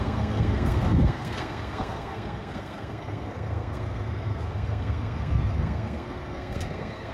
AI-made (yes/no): yes